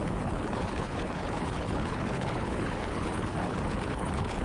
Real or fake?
fake